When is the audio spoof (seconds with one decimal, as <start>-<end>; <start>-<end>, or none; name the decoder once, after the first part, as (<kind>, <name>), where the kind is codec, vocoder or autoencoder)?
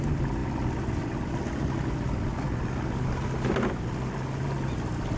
none